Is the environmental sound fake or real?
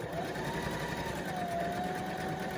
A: real